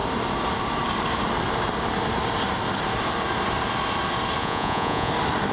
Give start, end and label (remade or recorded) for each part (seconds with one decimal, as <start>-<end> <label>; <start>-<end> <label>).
0.0-4.4 recorded; 4.4-5.1 remade; 5.1-5.5 recorded